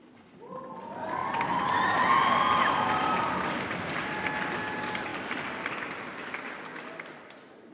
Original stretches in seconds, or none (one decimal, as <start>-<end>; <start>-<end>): 0.0-1.2; 2.6-5.1; 5.7-6.7; 7.3-7.7